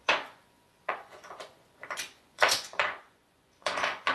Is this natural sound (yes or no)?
no